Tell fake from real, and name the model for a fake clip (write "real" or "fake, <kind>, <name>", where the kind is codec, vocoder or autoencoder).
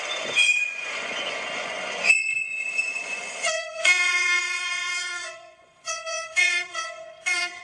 fake, vocoder, Vocos